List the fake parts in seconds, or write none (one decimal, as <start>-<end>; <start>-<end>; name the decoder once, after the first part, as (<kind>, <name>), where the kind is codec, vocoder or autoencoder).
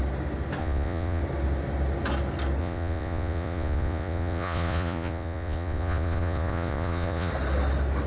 0.6-1.2 (vocoder, Vocos); 2.6-7.3